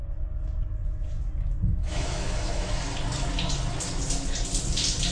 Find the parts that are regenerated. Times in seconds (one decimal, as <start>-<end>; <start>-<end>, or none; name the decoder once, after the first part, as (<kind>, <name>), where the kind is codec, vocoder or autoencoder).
1.8-2.7 (autoencoder, DAC-VAE)